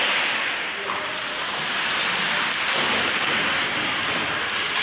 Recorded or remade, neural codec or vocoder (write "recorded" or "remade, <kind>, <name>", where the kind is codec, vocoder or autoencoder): recorded